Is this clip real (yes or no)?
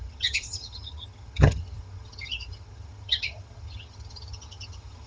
no